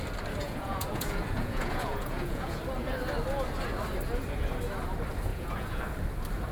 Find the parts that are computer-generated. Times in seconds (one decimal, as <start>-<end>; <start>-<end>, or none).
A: 0.4-2.6; 5.3-5.8